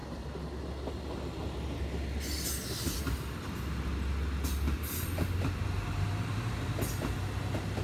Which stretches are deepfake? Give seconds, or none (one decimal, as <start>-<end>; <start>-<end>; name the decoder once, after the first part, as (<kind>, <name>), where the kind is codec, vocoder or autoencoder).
none